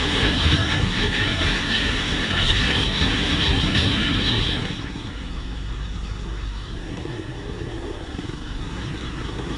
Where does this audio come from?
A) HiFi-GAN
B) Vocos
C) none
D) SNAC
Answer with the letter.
D